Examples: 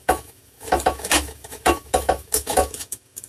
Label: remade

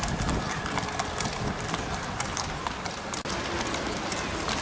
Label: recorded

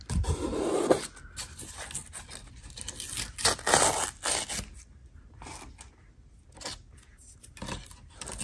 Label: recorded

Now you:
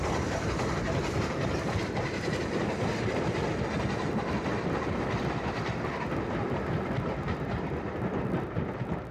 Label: recorded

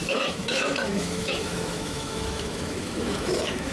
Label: remade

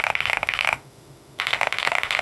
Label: remade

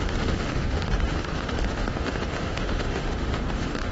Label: remade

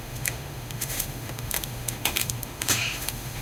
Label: remade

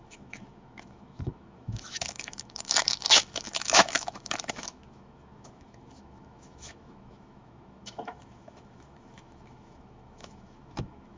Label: remade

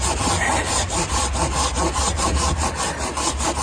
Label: recorded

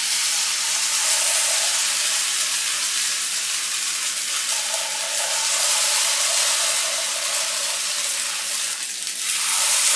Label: recorded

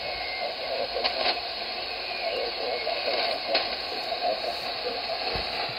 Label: recorded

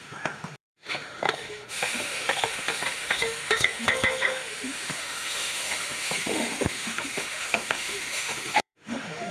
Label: remade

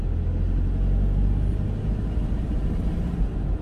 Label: recorded